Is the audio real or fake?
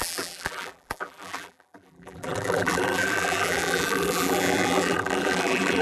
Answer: fake